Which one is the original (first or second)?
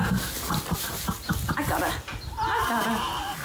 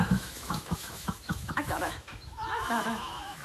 first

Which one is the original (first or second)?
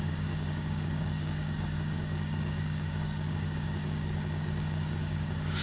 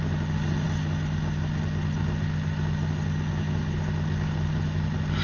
second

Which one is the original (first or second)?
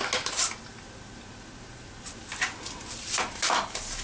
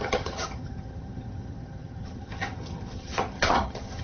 first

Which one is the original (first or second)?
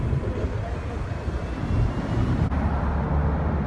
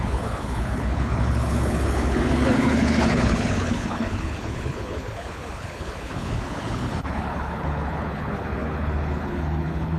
first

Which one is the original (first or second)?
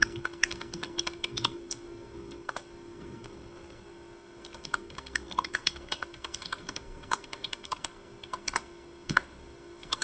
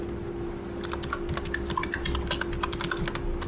second